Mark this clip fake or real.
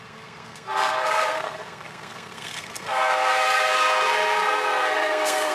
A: fake